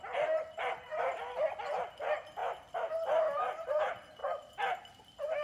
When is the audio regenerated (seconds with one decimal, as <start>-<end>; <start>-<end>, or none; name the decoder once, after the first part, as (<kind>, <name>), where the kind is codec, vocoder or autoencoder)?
0.0-2.4 (vocoder, BigVGAN v2); 3.2-4.2; 4.9-5.4

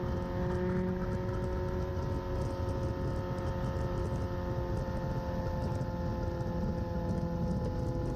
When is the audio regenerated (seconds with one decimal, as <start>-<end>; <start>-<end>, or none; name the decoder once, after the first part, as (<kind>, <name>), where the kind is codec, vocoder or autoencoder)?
none

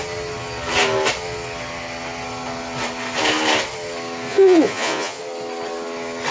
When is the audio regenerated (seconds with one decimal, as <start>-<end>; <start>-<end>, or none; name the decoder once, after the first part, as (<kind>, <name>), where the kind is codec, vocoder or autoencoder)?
4.3-5.2 (vocoder, Vocos)

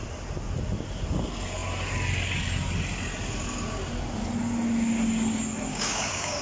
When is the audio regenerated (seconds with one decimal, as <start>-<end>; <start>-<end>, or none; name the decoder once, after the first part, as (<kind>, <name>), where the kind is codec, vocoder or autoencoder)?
5.7-6.4 (codec, DAC)

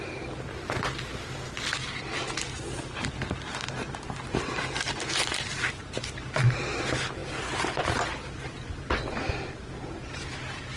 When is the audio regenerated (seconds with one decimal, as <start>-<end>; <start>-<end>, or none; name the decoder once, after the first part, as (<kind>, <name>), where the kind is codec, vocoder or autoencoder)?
none

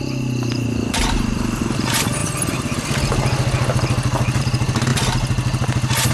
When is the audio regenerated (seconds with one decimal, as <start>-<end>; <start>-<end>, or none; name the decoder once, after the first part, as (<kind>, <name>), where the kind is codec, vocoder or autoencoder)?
0.0-2.2 (vocoder, BigVGAN v2); 4.4-4.9

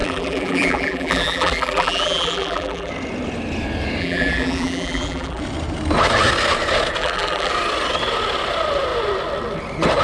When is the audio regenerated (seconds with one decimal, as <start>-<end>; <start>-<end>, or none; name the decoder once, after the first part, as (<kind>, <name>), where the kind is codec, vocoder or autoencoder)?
0.0-2.9 (vocoder, BigVGAN v2); 4.0-5.4; 7.0-7.5